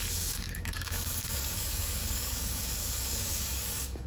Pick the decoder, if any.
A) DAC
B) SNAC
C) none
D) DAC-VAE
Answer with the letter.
A